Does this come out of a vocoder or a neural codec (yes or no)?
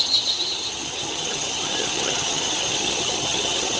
yes